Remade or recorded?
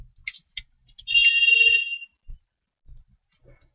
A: recorded